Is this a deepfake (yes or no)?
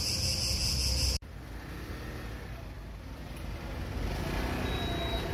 no